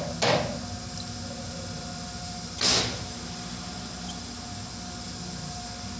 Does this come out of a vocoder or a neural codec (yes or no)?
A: no